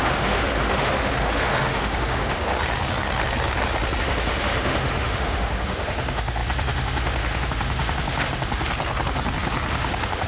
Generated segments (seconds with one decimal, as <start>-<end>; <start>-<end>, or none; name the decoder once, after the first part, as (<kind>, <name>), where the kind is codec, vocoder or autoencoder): 0.0-2.5 (autoencoder, DAC-VAE); 4.0-8.7; 9.7-10.3

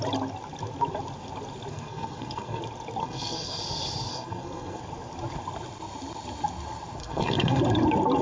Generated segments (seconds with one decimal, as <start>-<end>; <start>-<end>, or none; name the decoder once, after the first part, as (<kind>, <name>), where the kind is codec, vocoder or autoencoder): 1.7-2.6 (codec, SNAC); 3.0-3.6; 4.1-4.8; 7.0-7.6

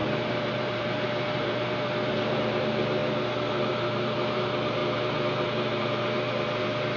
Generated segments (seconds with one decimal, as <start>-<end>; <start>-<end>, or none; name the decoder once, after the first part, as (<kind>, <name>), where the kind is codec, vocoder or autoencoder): 0.0-7.0 (vocoder, BigVGAN v2)

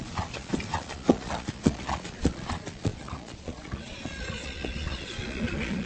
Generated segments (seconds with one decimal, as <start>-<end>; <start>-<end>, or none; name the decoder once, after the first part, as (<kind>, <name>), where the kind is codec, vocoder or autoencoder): 0.0-5.9 (vocoder, Vocos)

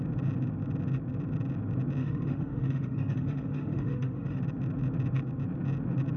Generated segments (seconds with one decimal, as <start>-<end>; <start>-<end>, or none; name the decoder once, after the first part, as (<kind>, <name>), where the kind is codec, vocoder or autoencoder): 2.0-4.4 (autoencoder, DAC-VAE)

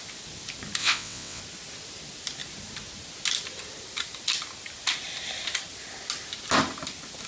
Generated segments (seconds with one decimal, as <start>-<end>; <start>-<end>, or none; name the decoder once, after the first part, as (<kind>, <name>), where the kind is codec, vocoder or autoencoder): 0.8-1.4 (vocoder, WaveNeXt)

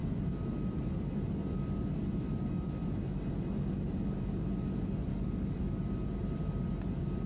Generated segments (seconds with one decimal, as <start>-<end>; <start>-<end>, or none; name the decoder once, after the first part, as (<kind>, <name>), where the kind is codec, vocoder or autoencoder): 5.1-5.6 (codec, DAC)